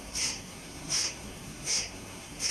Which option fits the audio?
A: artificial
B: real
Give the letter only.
A